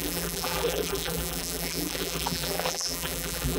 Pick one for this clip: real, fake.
fake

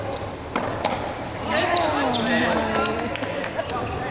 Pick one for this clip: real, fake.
real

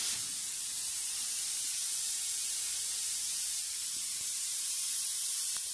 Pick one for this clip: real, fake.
fake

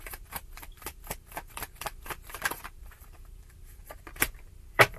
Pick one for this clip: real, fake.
fake